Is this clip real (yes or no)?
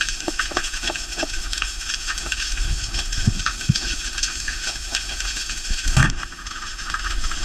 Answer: no